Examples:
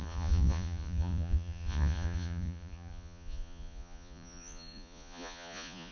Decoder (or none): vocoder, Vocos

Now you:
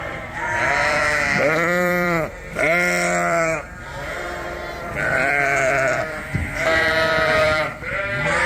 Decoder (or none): vocoder, BigVGAN v2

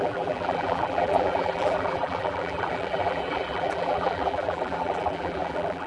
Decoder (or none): vocoder, BigVGAN v2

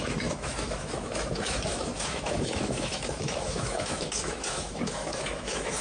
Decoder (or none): autoencoder, DAC-VAE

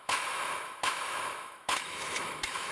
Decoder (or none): autoencoder, DAC-VAE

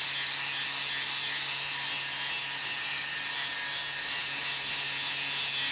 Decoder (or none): none